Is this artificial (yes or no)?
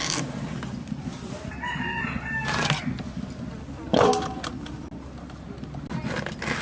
no